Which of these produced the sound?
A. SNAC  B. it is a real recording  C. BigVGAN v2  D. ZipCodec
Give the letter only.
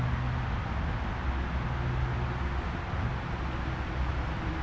B